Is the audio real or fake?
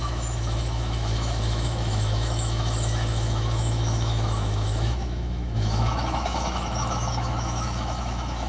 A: fake